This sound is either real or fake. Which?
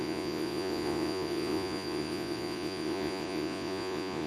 fake